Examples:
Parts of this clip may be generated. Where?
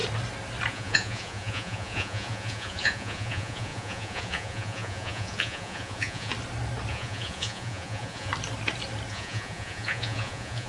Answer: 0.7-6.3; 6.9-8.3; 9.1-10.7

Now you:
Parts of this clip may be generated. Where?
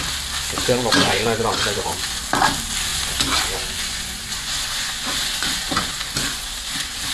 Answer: 0.6-2.2; 2.9-7.1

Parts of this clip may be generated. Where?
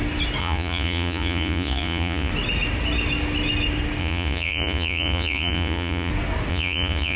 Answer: 0.4-2.3; 4.0-6.1; 6.5-7.2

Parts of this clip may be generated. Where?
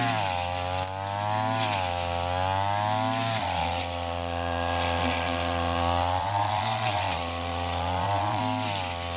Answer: 3.4-8.4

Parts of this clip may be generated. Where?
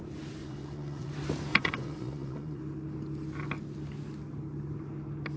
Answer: 0.4-1.1; 1.5-2.6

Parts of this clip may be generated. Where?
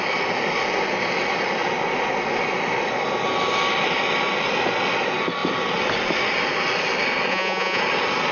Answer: 7.3-7.8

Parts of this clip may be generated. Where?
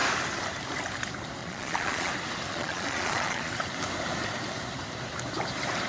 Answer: 1.4-2.1; 2.5-3.5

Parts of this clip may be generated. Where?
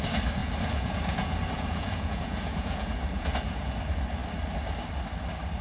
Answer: 0.4-3.8